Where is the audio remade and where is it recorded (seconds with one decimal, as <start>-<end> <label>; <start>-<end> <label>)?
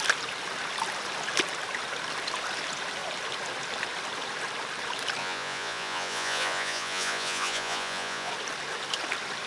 0.0-5.2 recorded; 5.2-8.3 remade; 8.3-9.5 recorded